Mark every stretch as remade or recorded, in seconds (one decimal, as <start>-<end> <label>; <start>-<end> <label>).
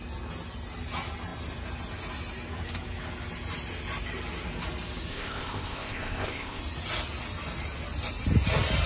0.0-5.1 recorded; 5.1-6.6 remade; 6.6-8.9 recorded